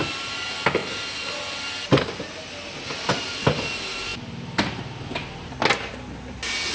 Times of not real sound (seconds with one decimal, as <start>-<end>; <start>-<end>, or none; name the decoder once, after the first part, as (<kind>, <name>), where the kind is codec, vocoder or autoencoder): none

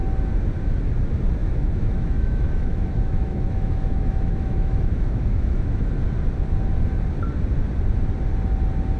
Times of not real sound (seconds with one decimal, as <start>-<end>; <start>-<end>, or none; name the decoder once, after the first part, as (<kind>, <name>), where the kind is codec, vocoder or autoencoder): 1.4-5.9 (autoencoder, DAC-VAE)

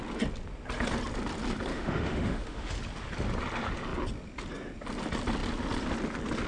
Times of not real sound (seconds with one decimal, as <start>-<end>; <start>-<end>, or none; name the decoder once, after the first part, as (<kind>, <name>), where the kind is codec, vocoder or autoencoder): 1.7-2.7 (autoencoder, DAC-VAE)

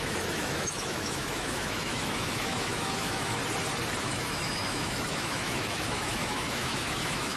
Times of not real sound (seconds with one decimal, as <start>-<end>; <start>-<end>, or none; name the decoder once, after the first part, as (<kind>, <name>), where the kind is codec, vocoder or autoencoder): 0.0-3.4 (autoencoder, DAC-VAE); 4.0-7.4

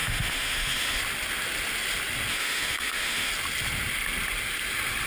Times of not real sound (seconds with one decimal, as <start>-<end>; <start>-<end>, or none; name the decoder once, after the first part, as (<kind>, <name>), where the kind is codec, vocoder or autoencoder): 0.0-1.0 (autoencoder, DAC-VAE); 2.3-3.3

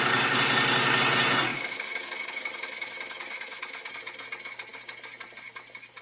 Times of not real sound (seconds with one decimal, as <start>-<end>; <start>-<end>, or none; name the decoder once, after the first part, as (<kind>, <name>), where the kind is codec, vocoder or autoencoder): 1.5-3.9 (autoencoder, DAC-VAE)